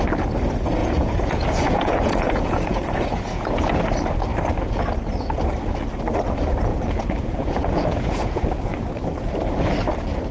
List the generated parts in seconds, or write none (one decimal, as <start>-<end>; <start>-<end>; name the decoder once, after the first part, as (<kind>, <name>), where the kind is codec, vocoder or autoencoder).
0.8-3.7 (vocoder, Vocos); 6.7-8.8